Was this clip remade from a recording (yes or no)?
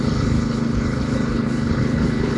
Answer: yes